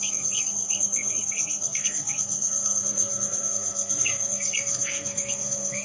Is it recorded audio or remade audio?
remade